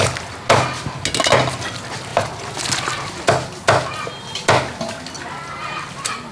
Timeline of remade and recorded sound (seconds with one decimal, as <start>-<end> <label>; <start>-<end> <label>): 0.0-6.3 recorded